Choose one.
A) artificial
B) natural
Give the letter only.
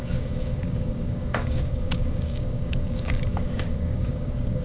A